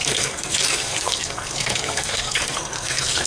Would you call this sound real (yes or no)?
no